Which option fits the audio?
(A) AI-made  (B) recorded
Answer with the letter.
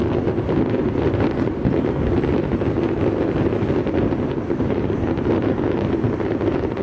B